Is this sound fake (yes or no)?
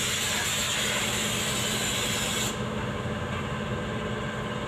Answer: no